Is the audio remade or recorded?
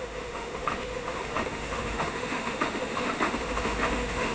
remade